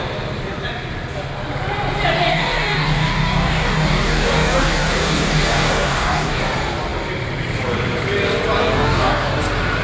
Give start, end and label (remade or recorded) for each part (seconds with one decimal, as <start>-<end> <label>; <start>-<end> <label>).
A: 0.0-2.3 recorded; 2.3-6.4 remade; 6.4-8.6 recorded; 8.6-9.4 remade; 9.4-9.8 recorded